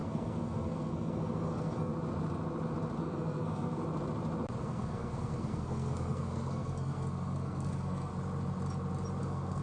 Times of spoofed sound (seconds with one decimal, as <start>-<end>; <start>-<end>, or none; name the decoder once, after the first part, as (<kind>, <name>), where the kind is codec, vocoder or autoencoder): 0.0-1.9 (codec, SNAC); 3.0-3.8; 4.6-8.1; 9.2-9.6